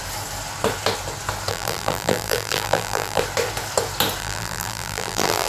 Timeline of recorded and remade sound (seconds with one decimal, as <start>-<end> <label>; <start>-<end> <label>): 0.0-1.5 recorded; 1.5-3.2 remade; 3.2-4.2 recorded; 4.2-5.5 remade